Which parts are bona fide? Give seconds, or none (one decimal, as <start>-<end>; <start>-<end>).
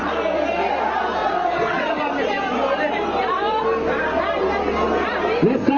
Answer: 0.0-1.2; 2.0-5.8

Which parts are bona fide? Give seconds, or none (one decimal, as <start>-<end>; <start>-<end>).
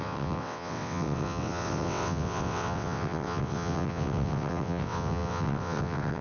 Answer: none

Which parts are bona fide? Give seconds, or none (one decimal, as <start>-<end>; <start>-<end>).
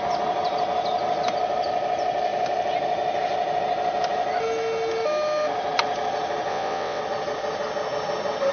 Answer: 0.0-6.5; 7.0-8.5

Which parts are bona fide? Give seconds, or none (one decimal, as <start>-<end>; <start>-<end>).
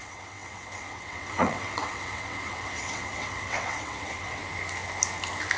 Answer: 4.4-5.6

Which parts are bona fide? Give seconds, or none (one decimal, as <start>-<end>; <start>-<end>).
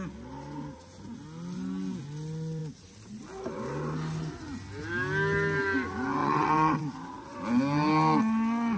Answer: 0.0-6.2; 6.8-8.8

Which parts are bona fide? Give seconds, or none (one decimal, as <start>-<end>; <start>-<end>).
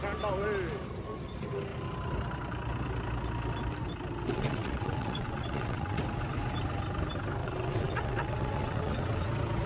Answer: 0.0-4.3; 6.0-7.4; 9.2-9.7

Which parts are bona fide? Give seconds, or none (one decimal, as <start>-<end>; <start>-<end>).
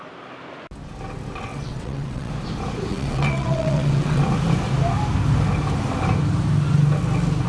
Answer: 0.0-1.5; 2.3-2.9; 4.2-7.5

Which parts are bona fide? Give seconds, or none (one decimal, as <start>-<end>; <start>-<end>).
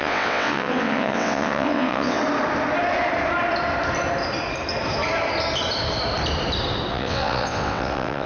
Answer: 2.2-6.9